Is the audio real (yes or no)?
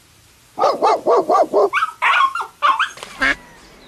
yes